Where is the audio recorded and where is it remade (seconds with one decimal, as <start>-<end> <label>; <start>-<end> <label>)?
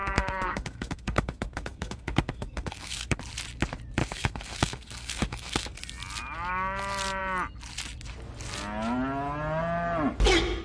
0.0-3.2 remade; 3.2-4.0 recorded; 4.0-5.8 remade; 5.8-10.6 recorded